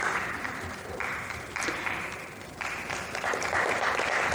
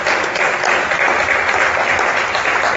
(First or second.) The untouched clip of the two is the second